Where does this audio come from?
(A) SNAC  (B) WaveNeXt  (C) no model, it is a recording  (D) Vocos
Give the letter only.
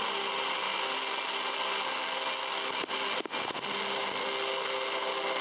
C